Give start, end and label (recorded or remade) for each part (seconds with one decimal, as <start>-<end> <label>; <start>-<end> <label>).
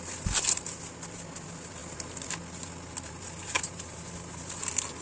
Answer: 0.0-3.4 recorded; 3.4-4.6 remade; 4.6-5.0 recorded